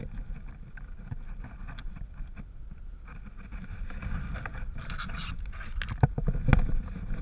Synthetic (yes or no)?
no